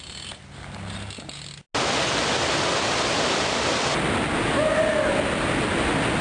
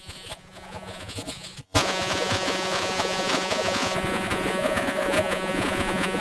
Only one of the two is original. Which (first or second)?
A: first